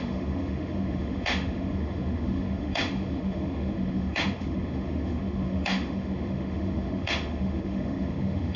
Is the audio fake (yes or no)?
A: yes